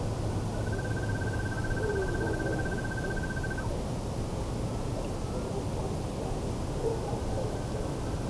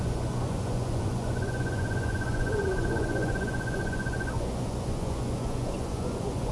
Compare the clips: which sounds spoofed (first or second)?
second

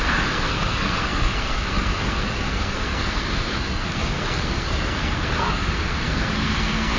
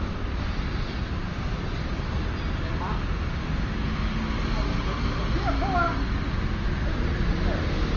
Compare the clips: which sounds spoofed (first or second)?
first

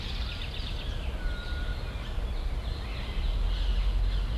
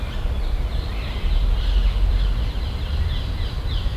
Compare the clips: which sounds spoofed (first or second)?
second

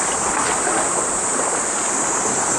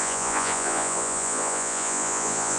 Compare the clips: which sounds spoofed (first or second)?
second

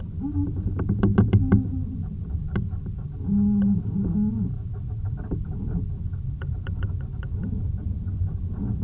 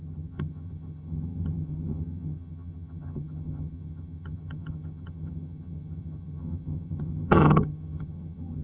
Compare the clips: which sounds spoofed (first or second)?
second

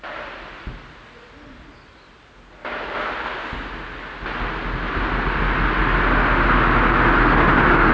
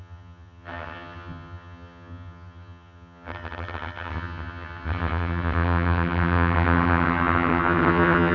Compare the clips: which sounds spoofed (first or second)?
second